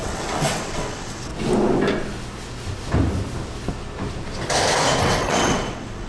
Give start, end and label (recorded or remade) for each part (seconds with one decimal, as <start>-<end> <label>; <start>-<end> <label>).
0.0-1.3 remade; 1.3-5.0 recorded; 5.0-6.1 remade